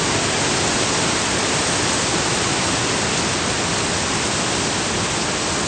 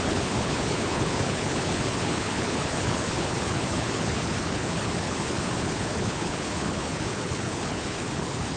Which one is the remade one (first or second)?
second